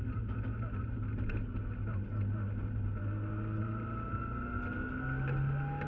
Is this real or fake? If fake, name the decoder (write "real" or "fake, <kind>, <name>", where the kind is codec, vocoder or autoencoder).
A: real